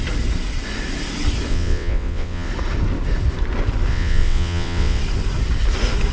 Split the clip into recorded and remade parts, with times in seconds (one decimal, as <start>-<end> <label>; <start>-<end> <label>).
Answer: 0.0-1.5 recorded; 1.5-2.5 remade; 2.5-3.9 recorded; 3.9-5.0 remade; 5.0-6.1 recorded